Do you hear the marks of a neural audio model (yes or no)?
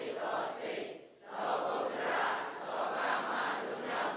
no